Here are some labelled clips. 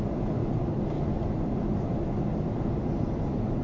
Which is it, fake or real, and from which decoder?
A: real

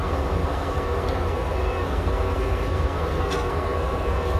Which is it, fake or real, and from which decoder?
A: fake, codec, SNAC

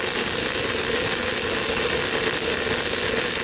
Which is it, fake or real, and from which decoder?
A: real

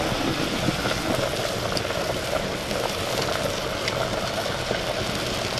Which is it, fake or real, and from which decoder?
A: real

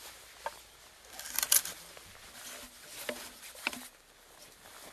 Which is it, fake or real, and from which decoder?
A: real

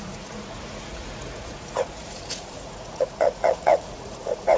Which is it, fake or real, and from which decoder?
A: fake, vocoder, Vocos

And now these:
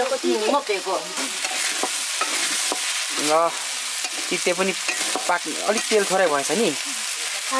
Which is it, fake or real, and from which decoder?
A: real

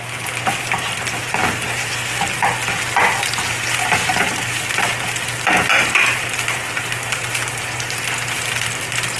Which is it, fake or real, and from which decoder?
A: real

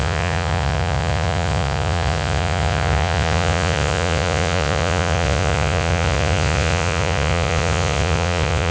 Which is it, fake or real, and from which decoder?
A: fake, vocoder, Vocos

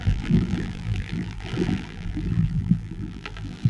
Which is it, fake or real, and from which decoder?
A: fake, vocoder, BigVGAN v2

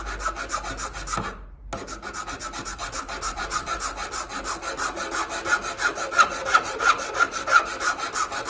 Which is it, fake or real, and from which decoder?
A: real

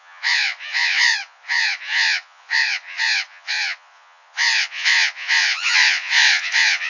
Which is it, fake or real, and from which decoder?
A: fake, vocoder, Vocos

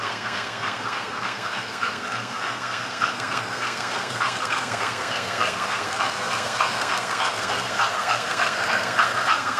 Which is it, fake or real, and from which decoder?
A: fake, codec, SNAC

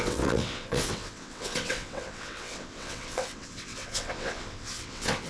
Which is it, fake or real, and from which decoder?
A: fake, vocoder, WaveNeXt